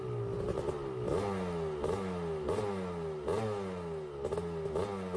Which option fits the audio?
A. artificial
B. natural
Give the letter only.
B